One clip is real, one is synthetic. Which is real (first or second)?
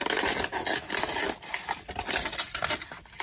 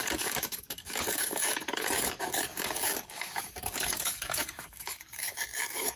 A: first